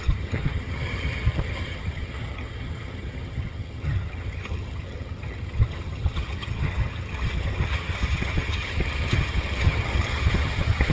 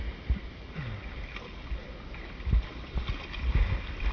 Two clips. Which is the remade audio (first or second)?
first